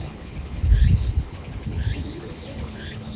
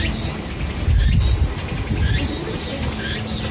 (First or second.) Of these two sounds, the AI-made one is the first